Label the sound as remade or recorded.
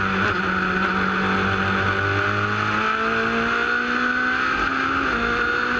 recorded